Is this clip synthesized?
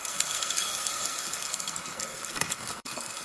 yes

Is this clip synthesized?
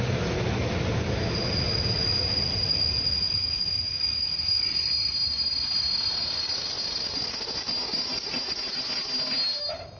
no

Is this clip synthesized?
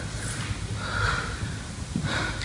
no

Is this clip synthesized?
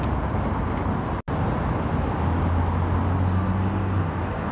no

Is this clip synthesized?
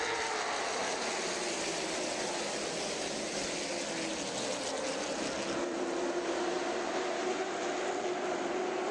no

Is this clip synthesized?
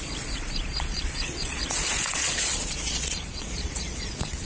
yes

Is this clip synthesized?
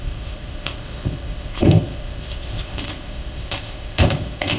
yes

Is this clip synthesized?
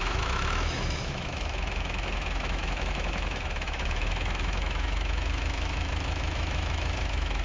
yes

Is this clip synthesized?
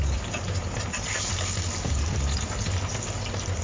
no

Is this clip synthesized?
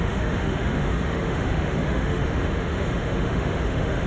yes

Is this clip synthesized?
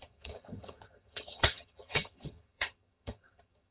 yes